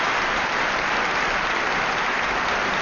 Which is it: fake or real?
real